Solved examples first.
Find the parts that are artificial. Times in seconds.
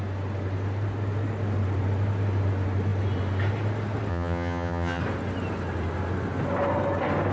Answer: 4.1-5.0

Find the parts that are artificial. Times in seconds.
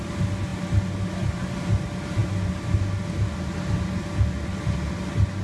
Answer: none